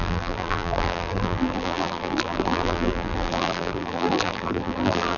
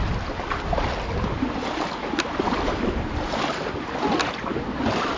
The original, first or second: second